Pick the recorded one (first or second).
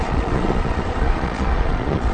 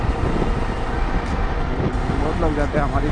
second